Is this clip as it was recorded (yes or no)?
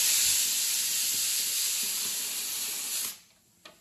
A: yes